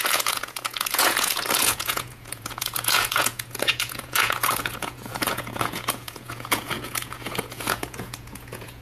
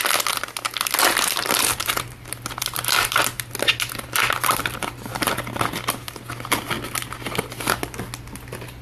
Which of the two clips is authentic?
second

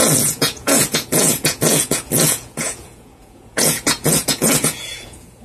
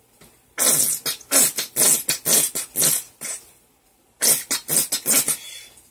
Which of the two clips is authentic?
second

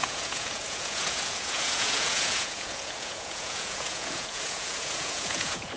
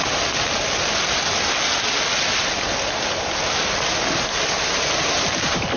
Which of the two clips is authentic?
second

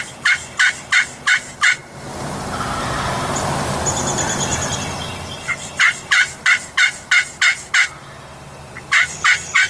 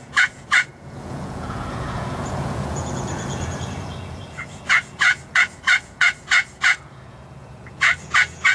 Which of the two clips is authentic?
first